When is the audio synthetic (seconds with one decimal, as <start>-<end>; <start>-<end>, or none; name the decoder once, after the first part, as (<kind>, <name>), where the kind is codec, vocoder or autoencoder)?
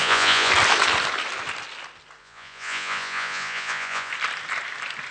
0.0-0.5 (vocoder, Vocos); 2.2-4.1